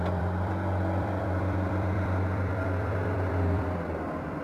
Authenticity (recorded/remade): remade